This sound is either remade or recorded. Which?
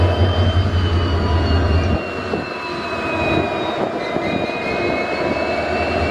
recorded